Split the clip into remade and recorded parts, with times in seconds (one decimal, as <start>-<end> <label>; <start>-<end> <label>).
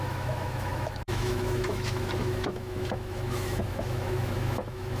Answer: 0.0-5.0 remade